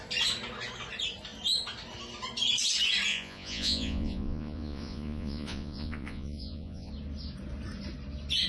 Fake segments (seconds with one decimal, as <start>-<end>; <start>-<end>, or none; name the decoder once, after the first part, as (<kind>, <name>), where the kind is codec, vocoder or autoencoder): 3.1-6.9 (vocoder, Vocos)